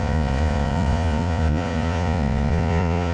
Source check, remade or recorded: remade